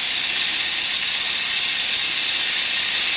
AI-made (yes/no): no